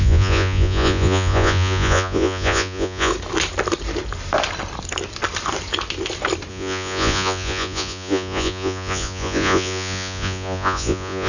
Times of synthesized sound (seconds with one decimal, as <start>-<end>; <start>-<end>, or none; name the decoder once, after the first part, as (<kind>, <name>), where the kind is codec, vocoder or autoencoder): 0.0-3.1 (vocoder, Vocos); 6.5-11.3